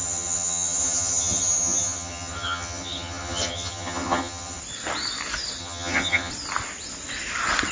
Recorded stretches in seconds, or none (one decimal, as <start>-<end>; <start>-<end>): 4.6-5.6; 6.3-7.7